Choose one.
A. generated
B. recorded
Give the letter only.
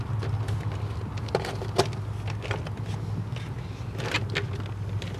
B